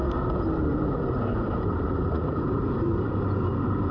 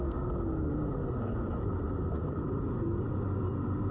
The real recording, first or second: second